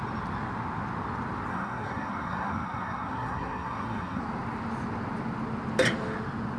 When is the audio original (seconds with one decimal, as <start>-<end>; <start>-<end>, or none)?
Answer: 0.0-1.5; 4.2-6.6